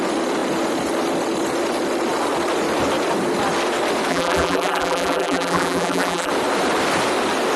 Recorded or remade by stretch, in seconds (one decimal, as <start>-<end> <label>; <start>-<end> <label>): 0.0-4.1 recorded; 4.1-6.3 remade; 6.3-7.6 recorded